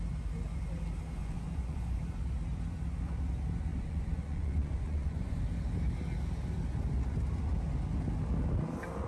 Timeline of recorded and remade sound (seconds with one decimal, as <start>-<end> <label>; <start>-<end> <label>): 0.0-1.2 recorded; 1.2-2.0 remade; 2.0-3.7 recorded; 3.7-5.4 remade; 5.4-9.1 recorded

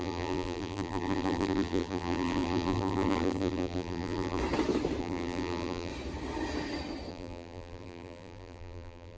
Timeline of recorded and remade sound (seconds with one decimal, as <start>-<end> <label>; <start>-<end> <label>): 0.0-4.4 remade; 4.4-5.0 recorded; 5.0-5.9 remade; 5.9-7.1 recorded; 7.1-9.2 remade

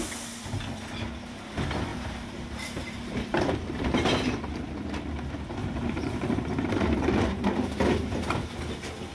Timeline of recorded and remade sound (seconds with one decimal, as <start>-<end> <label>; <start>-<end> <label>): 0.0-1.9 recorded; 1.9-4.6 remade; 4.6-5.6 recorded; 5.6-8.4 remade; 8.4-9.1 recorded

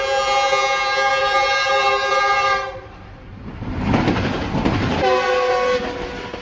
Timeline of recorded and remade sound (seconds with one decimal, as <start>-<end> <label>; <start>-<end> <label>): 0.0-1.2 recorded; 1.2-5.0 remade; 5.0-6.4 recorded

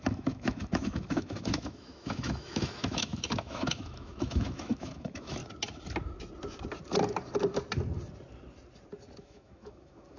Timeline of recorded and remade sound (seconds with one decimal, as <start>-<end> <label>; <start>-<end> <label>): 0.0-5.4 remade; 5.4-9.2 recorded; 9.2-10.2 remade